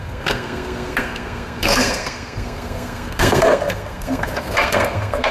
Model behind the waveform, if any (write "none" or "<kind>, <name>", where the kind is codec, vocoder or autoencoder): codec, SNAC